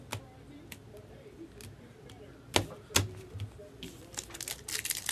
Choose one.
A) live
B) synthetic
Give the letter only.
A